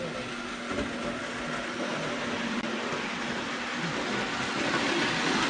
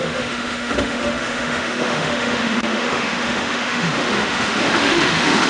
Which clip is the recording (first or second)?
first